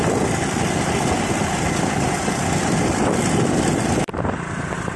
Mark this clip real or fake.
fake